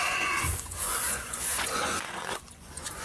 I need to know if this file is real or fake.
fake